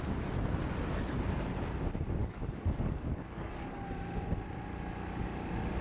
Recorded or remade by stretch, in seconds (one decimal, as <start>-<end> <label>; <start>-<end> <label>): 0.0-2.2 recorded; 2.2-3.8 remade; 3.8-5.8 recorded